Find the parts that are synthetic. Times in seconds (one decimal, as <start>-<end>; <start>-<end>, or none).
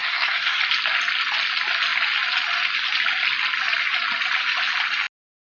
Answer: 0.0-0.6